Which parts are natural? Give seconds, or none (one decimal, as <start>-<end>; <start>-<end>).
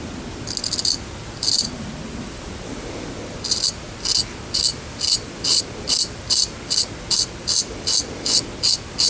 0.0-4.7; 5.6-9.1